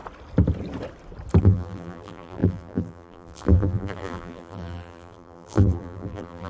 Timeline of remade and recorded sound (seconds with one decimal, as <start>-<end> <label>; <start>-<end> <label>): 0.0-1.4 recorded; 1.4-6.5 remade